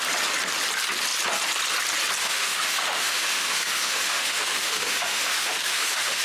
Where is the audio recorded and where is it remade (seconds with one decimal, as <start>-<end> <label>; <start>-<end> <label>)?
0.0-2.2 recorded; 2.2-6.2 remade